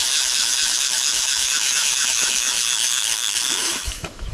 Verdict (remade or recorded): remade